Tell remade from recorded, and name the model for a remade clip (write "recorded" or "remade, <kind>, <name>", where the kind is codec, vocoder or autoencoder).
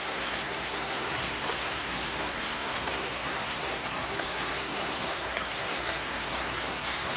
remade, codec, SNAC